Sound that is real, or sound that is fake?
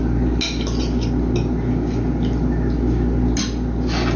real